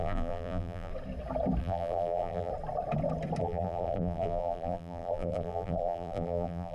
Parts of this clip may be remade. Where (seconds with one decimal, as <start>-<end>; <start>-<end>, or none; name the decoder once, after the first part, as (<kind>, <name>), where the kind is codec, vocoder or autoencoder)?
0.0-0.9 (vocoder, BigVGAN v2); 1.6-2.5; 3.4-6.7

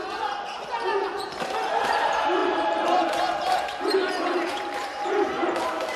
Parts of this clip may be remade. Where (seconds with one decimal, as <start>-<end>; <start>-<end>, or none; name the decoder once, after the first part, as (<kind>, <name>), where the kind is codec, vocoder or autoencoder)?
0.9-1.9 (vocoder, BigVGAN v2); 2.4-6.0

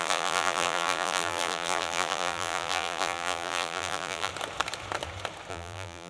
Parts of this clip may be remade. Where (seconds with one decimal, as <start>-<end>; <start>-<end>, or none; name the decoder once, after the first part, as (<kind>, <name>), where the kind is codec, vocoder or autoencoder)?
0.0-4.3 (vocoder, BigVGAN v2); 5.5-6.1

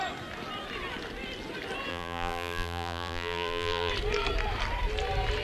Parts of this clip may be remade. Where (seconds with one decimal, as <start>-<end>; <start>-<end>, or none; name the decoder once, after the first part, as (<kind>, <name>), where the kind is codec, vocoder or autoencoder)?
1.9-3.9 (vocoder, BigVGAN v2)